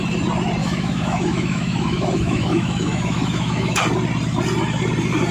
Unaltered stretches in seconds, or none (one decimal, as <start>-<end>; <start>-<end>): 0.0-0.6; 3.8-5.3